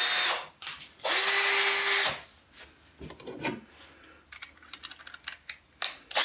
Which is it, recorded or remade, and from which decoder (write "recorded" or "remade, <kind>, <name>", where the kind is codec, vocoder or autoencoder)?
recorded